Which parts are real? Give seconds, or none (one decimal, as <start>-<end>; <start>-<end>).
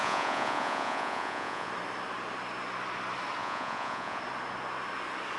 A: 1.7-3.4; 4.2-5.4